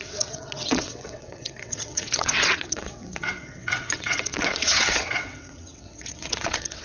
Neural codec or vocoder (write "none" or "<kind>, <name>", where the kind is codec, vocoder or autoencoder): vocoder, WaveNeXt